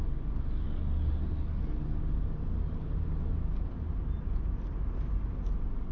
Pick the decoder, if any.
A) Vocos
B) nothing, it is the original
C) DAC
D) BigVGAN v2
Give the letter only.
B